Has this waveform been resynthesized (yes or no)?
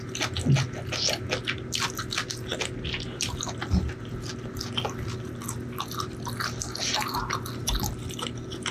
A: no